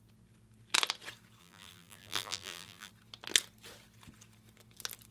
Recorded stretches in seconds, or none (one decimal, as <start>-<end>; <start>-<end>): 0.0-1.4; 2.9-5.1